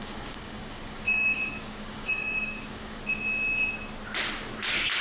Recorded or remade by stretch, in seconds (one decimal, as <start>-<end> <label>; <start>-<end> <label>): 0.0-3.0 remade; 3.0-5.0 recorded